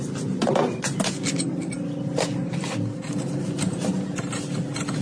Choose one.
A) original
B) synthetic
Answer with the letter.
A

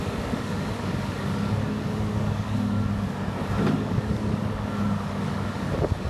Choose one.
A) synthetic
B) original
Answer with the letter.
A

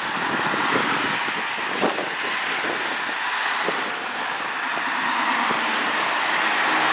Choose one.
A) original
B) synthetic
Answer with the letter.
A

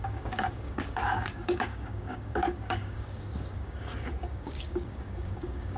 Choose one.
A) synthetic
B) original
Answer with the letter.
A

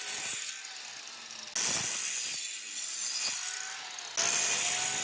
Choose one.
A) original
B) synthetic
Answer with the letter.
A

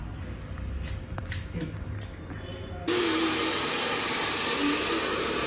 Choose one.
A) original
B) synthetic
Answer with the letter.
A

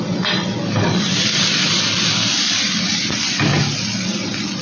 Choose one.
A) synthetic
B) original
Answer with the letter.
B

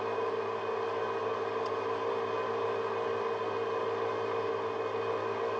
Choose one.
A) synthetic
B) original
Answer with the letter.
B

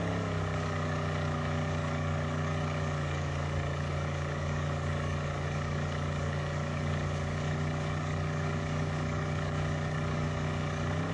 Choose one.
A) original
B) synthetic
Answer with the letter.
B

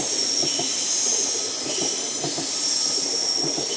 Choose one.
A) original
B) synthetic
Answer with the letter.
A